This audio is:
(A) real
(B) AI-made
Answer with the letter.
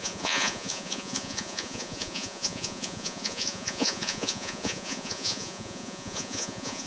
B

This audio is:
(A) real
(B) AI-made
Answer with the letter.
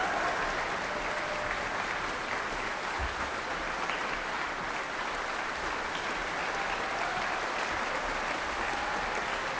A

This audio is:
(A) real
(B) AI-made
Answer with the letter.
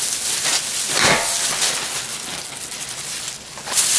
A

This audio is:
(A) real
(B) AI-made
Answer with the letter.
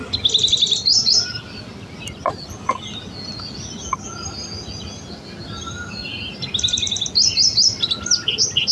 A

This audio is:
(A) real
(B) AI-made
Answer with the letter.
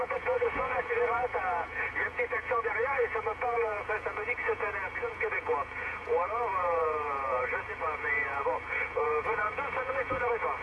B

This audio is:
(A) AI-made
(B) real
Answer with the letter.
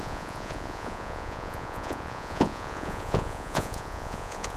A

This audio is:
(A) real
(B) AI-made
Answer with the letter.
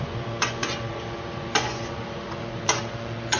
B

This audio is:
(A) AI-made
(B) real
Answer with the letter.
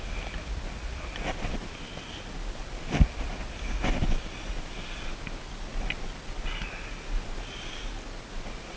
B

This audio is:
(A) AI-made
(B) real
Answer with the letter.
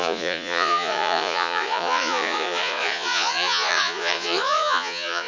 A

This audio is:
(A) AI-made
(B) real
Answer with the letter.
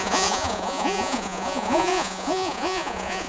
A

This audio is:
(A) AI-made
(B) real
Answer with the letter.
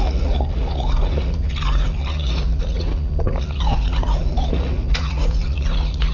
A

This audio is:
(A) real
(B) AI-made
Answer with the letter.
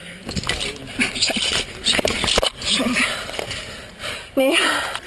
A